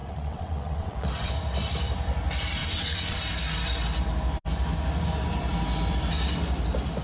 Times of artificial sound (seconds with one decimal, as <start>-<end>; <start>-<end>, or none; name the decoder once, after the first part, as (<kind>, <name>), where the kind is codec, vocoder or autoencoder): 0.0-1.3 (vocoder, WaveNeXt); 2.6-3.2